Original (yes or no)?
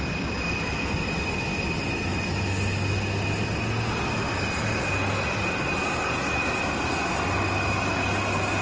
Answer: yes